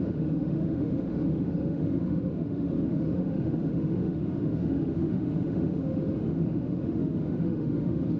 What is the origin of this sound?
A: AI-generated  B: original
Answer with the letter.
A